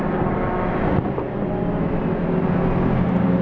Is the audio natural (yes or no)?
yes